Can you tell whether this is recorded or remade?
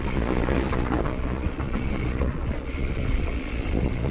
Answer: remade